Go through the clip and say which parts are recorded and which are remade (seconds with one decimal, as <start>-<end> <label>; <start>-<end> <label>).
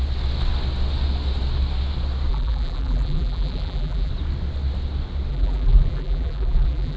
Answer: 0.0-2.3 recorded; 2.3-4.1 remade; 4.1-5.3 recorded; 5.3-7.0 remade